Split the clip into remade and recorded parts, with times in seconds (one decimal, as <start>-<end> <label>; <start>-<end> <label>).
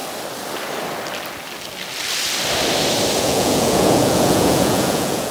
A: 0.0-3.2 recorded; 3.2-5.3 remade